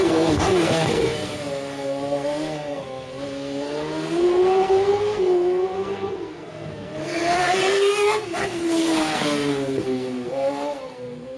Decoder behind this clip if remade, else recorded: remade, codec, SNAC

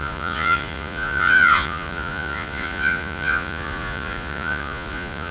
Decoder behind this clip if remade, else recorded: remade, vocoder, Vocos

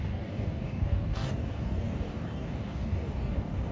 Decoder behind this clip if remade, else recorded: remade, codec, DAC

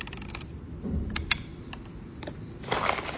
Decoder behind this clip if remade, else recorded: remade, vocoder, BigVGAN v2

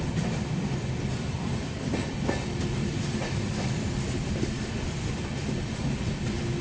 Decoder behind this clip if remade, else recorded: recorded